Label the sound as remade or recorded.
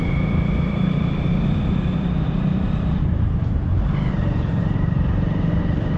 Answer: remade